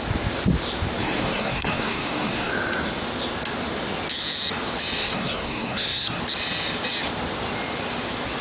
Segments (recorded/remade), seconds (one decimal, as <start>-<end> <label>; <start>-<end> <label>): 0.0-1.0 recorded; 1.0-2.5 remade; 2.5-5.0 recorded; 5.0-6.2 remade; 6.2-8.4 recorded